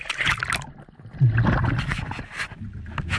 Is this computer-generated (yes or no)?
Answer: no